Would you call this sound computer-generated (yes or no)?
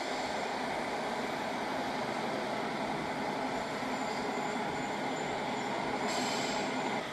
no